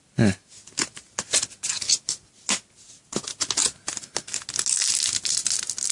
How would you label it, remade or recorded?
recorded